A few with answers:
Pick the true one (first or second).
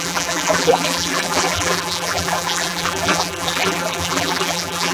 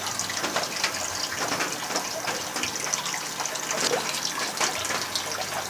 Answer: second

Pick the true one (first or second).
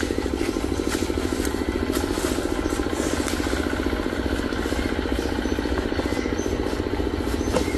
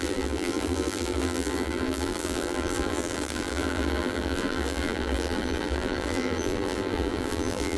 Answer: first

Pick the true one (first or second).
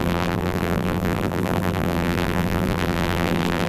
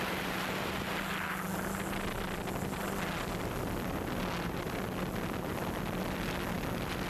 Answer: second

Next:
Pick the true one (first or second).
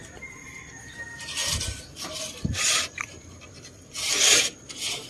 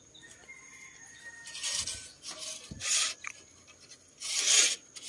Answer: second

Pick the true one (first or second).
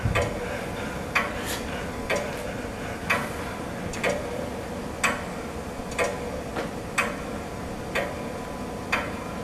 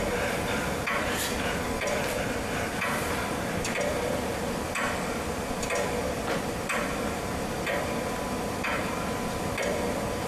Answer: first